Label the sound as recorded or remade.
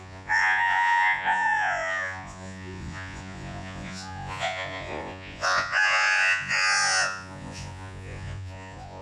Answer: remade